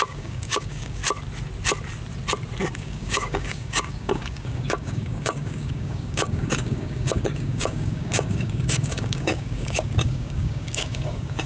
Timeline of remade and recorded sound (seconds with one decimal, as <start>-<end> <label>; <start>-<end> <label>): 0.0-1.0 remade; 1.0-2.7 recorded; 2.7-11.5 remade